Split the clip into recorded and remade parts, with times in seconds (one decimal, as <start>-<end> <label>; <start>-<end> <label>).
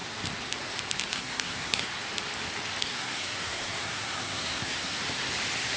0.0-1.1 recorded; 1.1-1.9 remade; 1.9-2.8 recorded; 2.8-5.0 remade; 5.0-5.8 recorded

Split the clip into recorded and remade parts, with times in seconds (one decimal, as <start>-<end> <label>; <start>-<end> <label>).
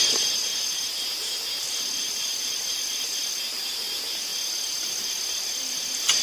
0.0-4.3 remade; 4.3-4.9 recorded; 4.9-6.2 remade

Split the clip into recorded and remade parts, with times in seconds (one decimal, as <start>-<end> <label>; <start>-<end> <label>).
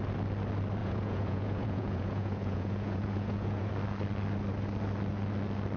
0.0-0.8 recorded; 0.8-3.7 remade; 3.7-5.8 recorded